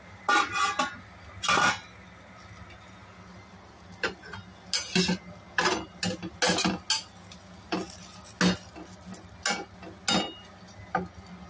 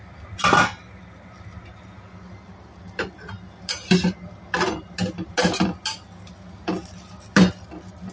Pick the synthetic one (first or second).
second